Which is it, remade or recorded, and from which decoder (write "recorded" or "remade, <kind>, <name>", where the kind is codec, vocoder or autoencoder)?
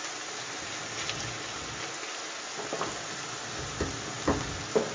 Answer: recorded